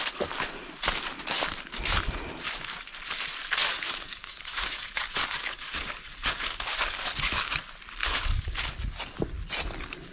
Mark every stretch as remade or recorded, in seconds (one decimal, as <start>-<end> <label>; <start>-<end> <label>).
0.0-3.6 recorded; 3.6-7.5 remade; 7.5-8.0 recorded; 8.0-8.6 remade; 8.6-10.1 recorded